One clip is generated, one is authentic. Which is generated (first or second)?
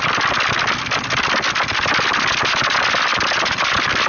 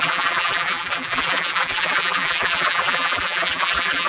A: second